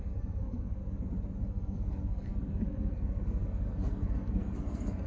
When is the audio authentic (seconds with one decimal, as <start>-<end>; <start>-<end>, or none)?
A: 0.8-1.5

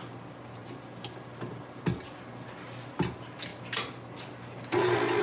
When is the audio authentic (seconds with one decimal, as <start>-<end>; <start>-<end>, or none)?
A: 0.0-5.2

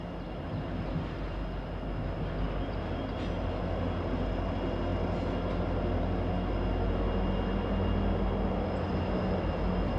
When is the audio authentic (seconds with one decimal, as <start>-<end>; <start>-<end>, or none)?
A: 0.0-10.0

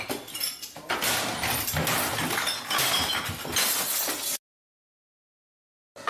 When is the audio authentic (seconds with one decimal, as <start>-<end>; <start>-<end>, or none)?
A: 0.0-6.1

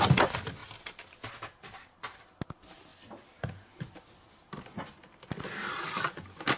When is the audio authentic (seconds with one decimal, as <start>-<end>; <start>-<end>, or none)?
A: 0.0-6.6

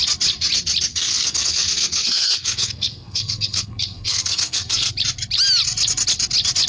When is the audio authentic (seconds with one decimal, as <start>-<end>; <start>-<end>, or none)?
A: 0.0-0.9; 4.9-6.7